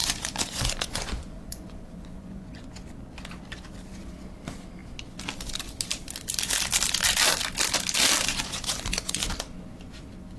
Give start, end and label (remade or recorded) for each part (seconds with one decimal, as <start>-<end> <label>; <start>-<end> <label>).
0.0-2.7 remade; 2.7-8.3 recorded; 8.3-9.3 remade; 9.3-10.4 recorded